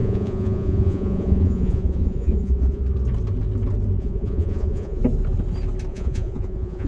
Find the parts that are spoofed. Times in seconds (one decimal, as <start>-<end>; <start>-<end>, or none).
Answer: 0.0-2.8; 4.0-5.0; 5.9-6.9